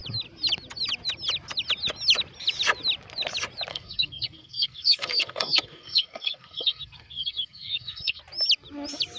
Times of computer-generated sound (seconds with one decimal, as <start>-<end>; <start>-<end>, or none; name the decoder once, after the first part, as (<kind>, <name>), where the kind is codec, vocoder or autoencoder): 3.7-8.2 (codec, SNAC)